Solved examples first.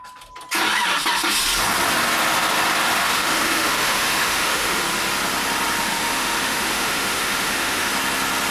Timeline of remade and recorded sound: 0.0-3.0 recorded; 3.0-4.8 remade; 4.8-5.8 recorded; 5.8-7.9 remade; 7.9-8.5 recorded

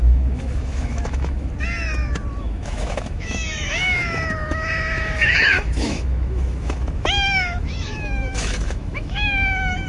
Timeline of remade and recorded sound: 0.0-1.5 remade; 1.5-2.4 recorded; 2.4-9.9 remade

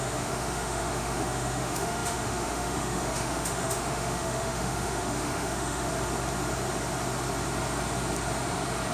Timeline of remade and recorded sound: 0.0-5.9 remade; 5.9-8.9 recorded

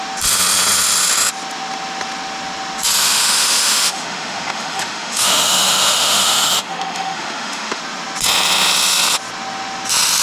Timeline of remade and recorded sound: 0.0-3.0 recorded; 3.0-7.8 remade; 7.8-10.2 recorded